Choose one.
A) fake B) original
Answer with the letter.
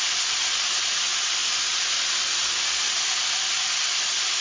B